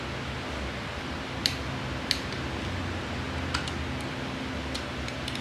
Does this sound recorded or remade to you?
recorded